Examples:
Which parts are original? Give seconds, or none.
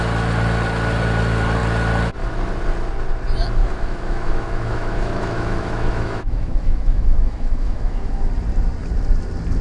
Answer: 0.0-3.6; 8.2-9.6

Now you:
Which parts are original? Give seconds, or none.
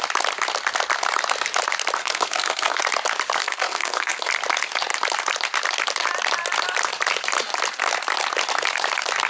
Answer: 0.0-2.0; 2.8-3.4; 4.3-9.3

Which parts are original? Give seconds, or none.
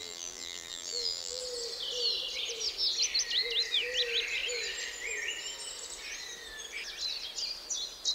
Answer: 1.4-8.1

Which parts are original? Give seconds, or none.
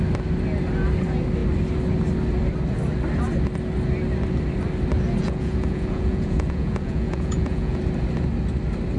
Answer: 0.0-5.2; 7.8-9.0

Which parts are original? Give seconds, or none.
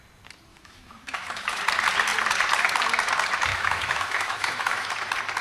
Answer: 0.0-0.5; 1.6-3.5; 4.9-5.4